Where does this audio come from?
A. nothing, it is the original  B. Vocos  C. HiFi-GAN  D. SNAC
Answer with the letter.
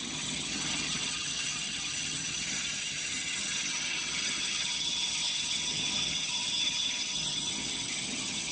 C